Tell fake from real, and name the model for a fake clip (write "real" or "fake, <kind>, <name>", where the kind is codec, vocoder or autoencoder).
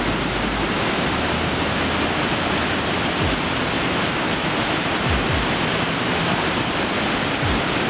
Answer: fake, vocoder, BigVGAN v2